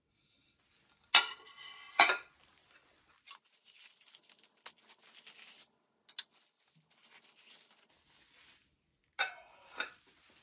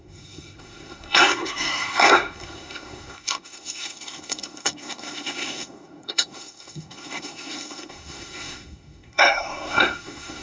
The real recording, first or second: first